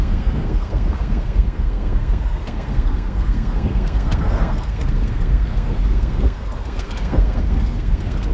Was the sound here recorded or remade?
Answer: remade